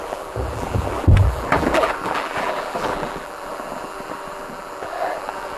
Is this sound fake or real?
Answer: fake